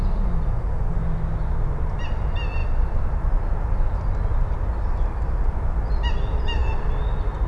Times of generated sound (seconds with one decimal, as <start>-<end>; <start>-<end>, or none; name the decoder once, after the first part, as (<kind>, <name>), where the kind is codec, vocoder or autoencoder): none